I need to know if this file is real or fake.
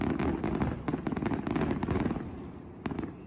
real